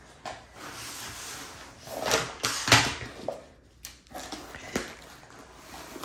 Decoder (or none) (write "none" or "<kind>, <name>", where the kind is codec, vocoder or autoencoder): none